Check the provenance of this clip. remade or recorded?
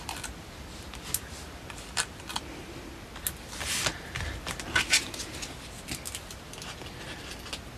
recorded